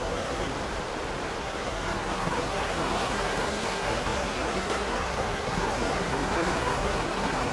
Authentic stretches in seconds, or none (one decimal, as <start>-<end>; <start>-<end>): 0.5-1.4